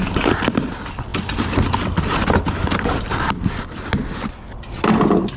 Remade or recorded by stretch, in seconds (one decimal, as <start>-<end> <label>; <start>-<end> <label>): 0.0-5.4 recorded